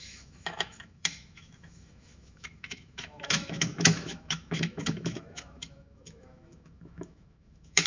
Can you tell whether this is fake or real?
fake